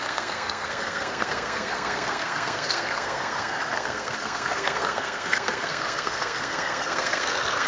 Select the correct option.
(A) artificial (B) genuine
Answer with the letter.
A